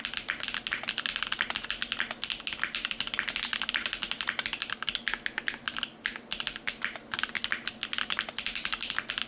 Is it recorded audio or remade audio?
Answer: recorded